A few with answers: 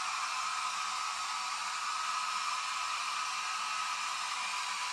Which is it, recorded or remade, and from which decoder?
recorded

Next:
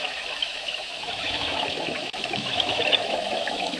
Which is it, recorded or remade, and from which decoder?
remade, autoencoder, DAC-VAE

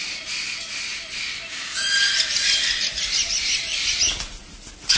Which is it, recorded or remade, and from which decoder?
recorded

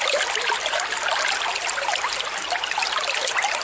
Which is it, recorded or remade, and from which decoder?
recorded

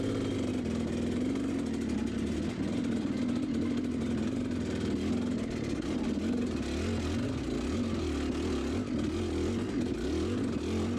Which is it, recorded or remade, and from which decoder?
recorded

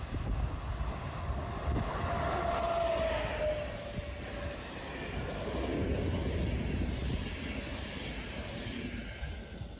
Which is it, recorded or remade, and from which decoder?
recorded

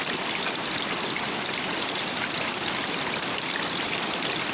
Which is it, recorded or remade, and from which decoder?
recorded